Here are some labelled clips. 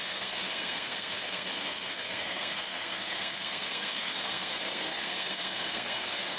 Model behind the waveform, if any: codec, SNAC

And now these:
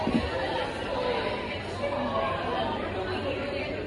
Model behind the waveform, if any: none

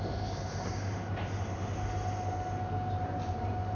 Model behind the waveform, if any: none